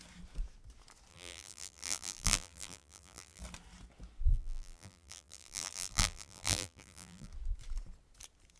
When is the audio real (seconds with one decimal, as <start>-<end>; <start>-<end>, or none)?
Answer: 0.0-1.1; 3.4-4.3; 7.3-8.6